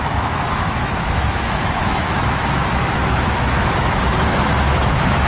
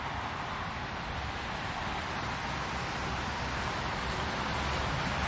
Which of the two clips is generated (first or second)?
first